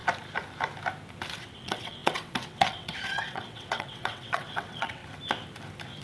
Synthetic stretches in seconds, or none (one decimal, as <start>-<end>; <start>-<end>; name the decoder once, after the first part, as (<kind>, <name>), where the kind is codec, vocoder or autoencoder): 1.4-5.0 (vocoder, WaveNeXt)